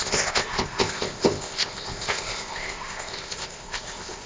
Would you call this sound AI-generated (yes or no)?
yes